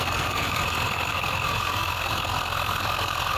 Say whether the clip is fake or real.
fake